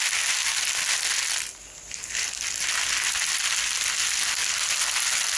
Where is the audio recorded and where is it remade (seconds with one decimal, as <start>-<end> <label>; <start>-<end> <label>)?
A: 0.0-5.4 recorded